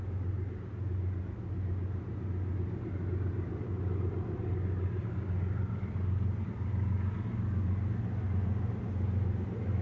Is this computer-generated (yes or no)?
no